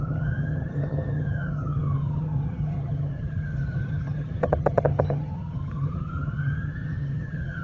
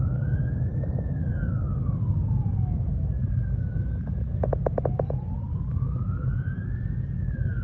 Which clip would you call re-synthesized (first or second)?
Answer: first